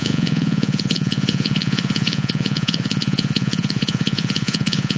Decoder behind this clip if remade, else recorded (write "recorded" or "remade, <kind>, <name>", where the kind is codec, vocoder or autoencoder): remade, vocoder, Vocos